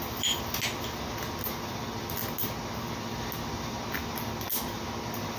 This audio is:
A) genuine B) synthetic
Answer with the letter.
A